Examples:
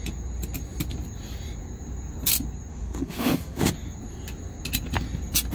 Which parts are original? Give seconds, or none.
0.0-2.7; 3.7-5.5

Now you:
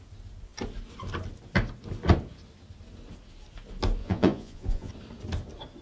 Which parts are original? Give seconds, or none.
0.0-4.0; 4.9-5.8

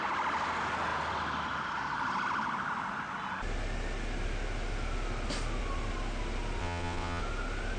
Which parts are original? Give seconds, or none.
0.0-6.6; 7.2-7.8

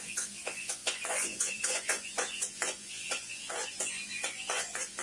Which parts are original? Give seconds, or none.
none

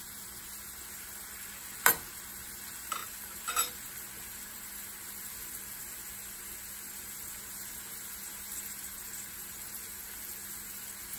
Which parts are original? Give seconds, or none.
0.0-11.2